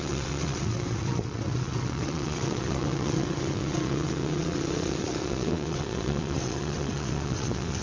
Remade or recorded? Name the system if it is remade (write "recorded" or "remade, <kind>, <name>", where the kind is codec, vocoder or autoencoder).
remade, vocoder, WaveNeXt